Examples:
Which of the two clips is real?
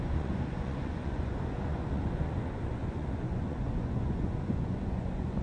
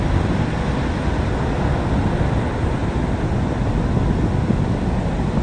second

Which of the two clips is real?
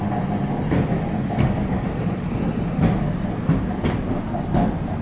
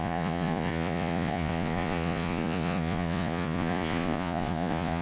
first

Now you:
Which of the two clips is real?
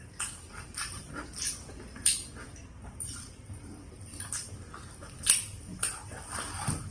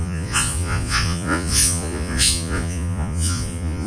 first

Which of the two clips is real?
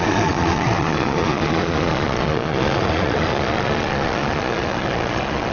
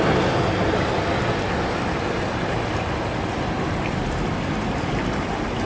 second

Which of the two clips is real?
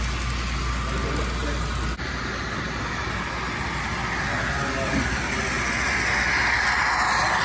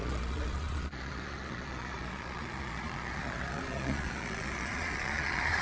first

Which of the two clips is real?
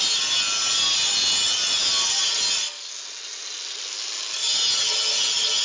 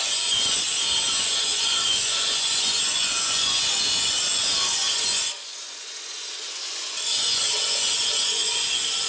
first